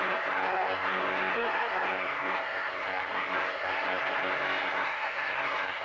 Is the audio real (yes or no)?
no